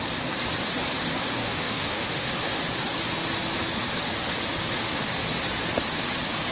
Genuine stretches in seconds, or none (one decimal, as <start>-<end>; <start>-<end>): 0.0-1.4; 2.6-6.5